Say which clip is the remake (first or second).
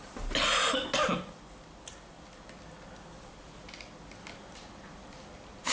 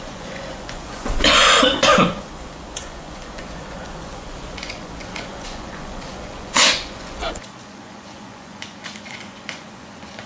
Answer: second